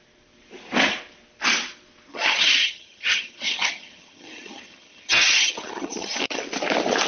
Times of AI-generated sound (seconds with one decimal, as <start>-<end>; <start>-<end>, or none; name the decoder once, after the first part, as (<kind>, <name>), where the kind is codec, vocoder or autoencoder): 2.1-6.4 (vocoder, HiFi-GAN)